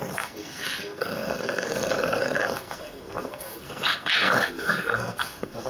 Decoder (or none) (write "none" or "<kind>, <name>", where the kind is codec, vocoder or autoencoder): codec, SNAC